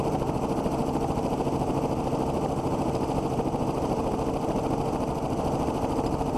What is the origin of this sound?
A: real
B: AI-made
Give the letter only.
A